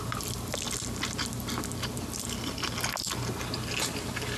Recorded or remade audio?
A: recorded